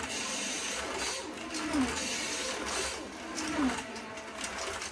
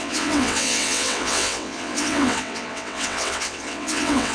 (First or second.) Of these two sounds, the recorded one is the first